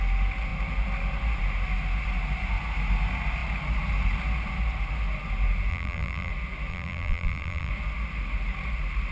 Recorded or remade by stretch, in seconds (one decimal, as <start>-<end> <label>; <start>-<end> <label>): 0.0-5.7 recorded; 5.7-6.3 remade; 6.3-6.7 recorded; 6.7-7.7 remade; 7.7-9.1 recorded